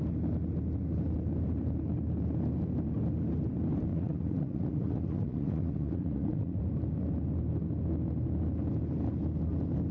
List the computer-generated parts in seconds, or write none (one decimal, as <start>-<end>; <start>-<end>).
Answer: 3.9-6.6